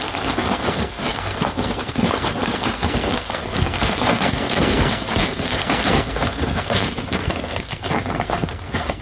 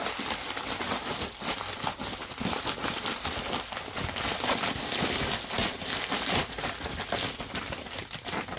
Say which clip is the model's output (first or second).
first